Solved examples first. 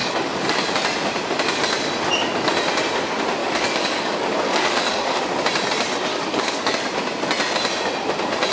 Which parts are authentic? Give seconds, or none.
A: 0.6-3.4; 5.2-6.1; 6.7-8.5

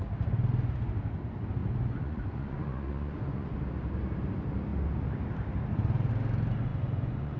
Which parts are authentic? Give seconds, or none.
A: 0.0-1.6; 3.5-6.7